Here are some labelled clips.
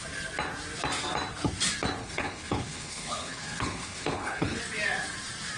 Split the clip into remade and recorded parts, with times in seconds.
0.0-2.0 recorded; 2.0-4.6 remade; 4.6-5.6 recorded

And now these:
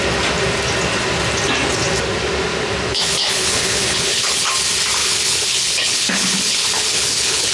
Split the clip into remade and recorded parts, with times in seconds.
0.0-2.9 recorded; 2.9-4.5 remade; 4.5-5.0 recorded; 5.0-7.5 remade

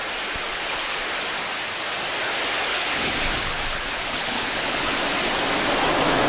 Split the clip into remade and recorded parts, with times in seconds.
0.0-0.5 recorded; 0.5-1.0 remade; 1.0-2.7 recorded; 2.7-4.9 remade; 4.9-6.3 recorded

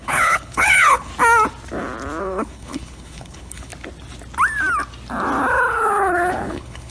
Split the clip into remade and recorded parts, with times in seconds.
0.0-1.1 remade; 1.1-2.2 recorded; 2.2-3.7 remade; 3.7-5.5 recorded; 5.5-6.9 remade

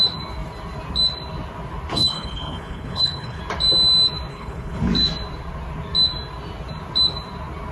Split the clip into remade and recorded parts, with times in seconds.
0.0-1.9 recorded; 1.9-3.4 remade; 3.4-4.3 recorded; 4.3-4.9 remade; 4.9-7.7 recorded

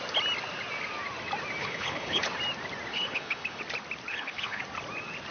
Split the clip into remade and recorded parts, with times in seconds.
0.0-1.6 recorded; 1.6-2.2 remade; 2.2-2.9 recorded; 2.9-3.6 remade; 3.6-4.1 recorded; 4.1-4.6 remade; 4.6-5.3 recorded

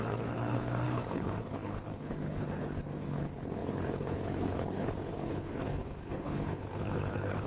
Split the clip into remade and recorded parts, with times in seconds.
0.0-7.5 remade